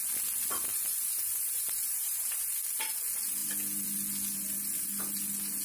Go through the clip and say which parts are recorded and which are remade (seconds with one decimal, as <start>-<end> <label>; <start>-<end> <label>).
0.0-0.7 recorded; 0.7-2.6 remade; 2.6-5.6 recorded